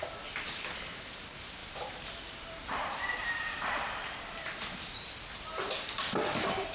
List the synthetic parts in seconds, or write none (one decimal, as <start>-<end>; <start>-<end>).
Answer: 1.6-4.6